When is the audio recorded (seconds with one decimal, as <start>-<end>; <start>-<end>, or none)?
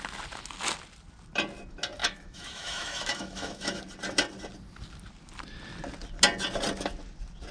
0.0-2.0; 3.8-7.5